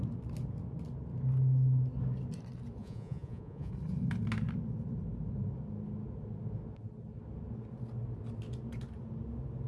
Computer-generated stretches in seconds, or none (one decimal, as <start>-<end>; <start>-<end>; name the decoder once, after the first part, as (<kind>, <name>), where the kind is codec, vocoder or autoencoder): 2.8-3.7 (vocoder, Vocos)